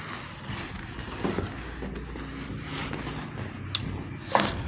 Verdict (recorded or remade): recorded